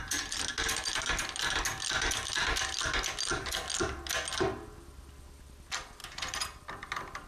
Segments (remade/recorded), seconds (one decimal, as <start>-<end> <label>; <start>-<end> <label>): 0.0-6.0 recorded; 6.0-6.6 remade; 6.6-7.3 recorded